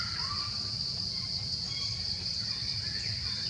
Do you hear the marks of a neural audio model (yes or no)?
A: no